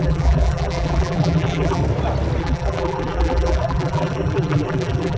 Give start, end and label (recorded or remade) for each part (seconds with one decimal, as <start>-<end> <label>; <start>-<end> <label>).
0.0-1.8 remade; 1.8-2.4 recorded; 2.4-5.2 remade